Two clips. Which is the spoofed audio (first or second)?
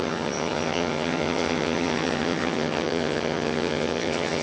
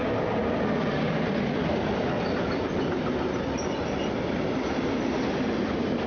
first